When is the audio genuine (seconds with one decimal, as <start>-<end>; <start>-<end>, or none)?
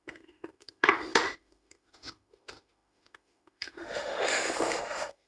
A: none